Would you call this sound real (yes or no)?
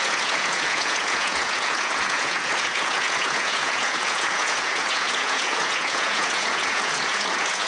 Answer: no